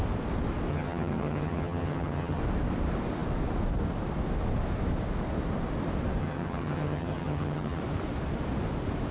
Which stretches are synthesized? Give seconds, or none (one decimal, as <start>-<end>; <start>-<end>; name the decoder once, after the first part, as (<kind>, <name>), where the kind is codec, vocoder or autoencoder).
0.7-2.4 (vocoder, HiFi-GAN); 6.2-7.8